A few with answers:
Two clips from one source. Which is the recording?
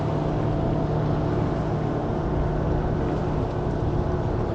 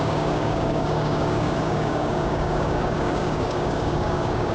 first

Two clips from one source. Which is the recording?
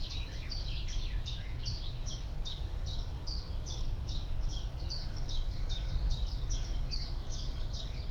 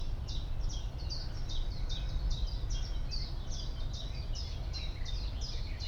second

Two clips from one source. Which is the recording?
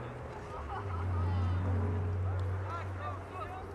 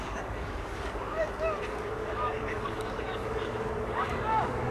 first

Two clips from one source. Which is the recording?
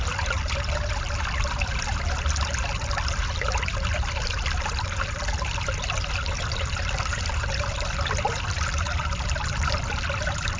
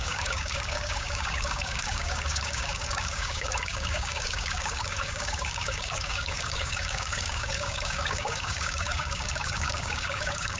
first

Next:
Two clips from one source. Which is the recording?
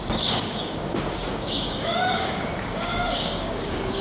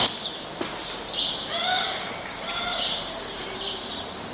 second